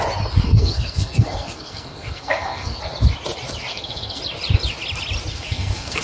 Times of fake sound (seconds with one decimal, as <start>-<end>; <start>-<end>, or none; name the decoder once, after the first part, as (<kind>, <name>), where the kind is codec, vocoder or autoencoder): 0.4-2.8 (codec, SNAC); 3.7-4.2; 5.3-6.0